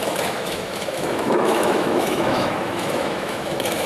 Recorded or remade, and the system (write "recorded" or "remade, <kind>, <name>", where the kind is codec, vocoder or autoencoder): remade, autoencoder, DAC-VAE